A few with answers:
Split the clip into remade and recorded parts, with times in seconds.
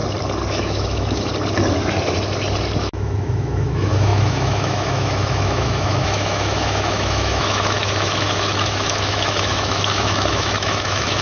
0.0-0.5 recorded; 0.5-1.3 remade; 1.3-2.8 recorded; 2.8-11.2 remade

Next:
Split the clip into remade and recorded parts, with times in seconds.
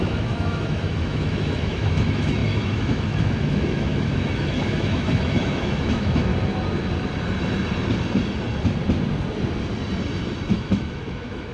0.0-6.3 remade; 6.3-10.5 recorded; 10.5-11.5 remade